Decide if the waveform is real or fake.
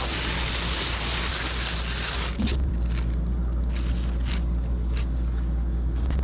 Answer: real